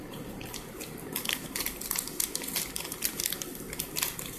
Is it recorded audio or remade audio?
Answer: recorded